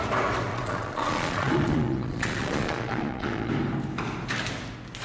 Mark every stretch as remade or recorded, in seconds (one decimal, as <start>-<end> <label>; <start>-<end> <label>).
0.0-0.5 recorded; 0.5-3.5 remade; 3.5-5.0 recorded